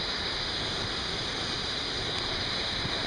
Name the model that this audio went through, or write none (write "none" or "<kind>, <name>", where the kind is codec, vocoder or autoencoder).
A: none